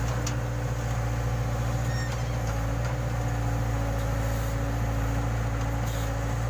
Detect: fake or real real